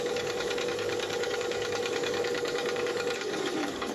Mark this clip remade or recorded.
remade